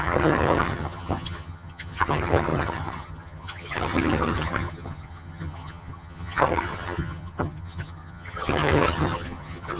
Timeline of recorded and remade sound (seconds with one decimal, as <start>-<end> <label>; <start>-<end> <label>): 0.0-9.8 remade